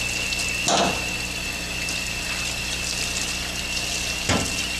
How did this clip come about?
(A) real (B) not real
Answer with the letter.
A